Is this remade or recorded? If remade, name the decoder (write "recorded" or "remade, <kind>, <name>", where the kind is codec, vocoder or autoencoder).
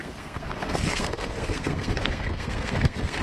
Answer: remade, codec, SNAC